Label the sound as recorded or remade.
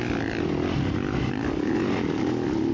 recorded